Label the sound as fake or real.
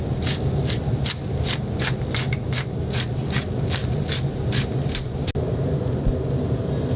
real